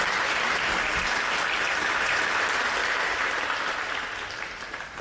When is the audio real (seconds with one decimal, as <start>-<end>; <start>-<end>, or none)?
0.0-1.9; 2.4-2.8; 3.3-5.0